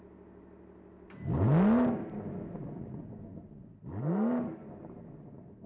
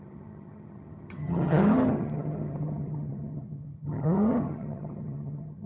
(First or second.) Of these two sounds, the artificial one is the second